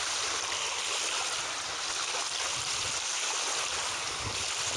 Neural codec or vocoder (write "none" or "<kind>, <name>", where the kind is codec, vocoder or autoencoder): none